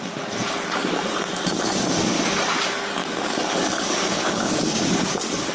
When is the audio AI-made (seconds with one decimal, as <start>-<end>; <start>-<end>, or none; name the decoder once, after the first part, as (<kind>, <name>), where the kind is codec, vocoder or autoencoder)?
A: 3.0-5.5 (codec, DAC)